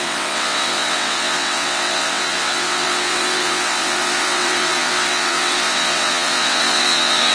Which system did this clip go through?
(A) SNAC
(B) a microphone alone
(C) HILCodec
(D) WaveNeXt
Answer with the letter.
D